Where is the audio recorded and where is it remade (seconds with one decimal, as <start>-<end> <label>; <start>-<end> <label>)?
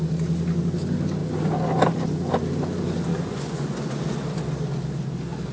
0.0-3.1 recorded; 3.1-4.0 remade; 4.0-5.5 recorded